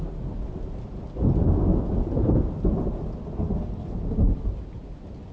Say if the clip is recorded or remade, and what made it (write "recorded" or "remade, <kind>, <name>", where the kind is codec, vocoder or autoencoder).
recorded